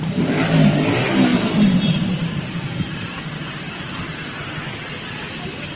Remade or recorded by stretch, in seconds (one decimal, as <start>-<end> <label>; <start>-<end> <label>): 0.0-1.3 recorded; 1.3-4.3 remade; 4.3-5.8 recorded

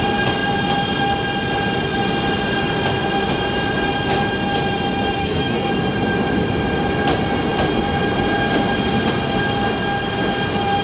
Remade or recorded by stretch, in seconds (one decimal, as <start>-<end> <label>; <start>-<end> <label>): 0.0-5.2 recorded; 5.2-5.7 remade; 5.7-10.8 recorded

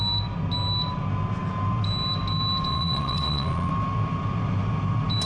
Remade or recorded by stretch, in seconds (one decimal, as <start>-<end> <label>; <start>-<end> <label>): 0.0-2.7 recorded; 2.7-3.7 remade; 3.7-5.3 recorded

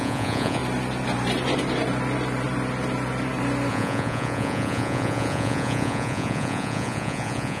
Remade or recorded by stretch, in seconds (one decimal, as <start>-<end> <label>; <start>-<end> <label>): 0.0-0.6 remade; 0.6-3.7 recorded; 3.7-7.6 remade

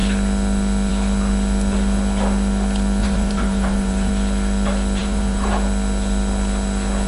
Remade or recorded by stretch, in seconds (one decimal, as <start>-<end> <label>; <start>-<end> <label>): 0.0-3.0 recorded; 3.0-4.1 remade; 4.1-5.0 recorded; 5.0-5.5 remade; 5.5-7.1 recorded

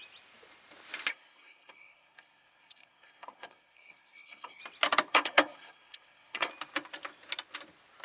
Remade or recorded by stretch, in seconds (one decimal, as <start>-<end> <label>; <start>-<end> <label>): 0.0-1.1 recorded; 1.1-4.6 remade; 4.6-5.1 recorded; 5.1-6.5 remade; 6.5-8.0 recorded

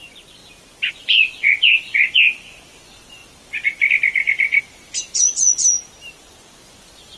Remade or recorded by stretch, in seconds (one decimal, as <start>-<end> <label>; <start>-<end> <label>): 0.0-0.4 remade; 0.4-0.9 recorded; 0.9-3.2 remade; 3.2-4.6 recorded; 4.6-5.6 remade; 5.6-6.2 recorded; 6.2-7.2 remade